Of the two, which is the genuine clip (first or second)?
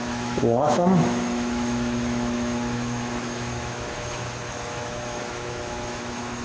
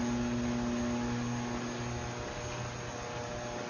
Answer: second